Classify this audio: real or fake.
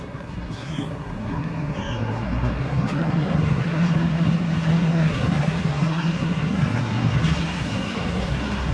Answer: fake